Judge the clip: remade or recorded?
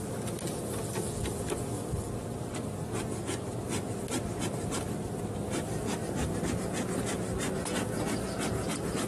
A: recorded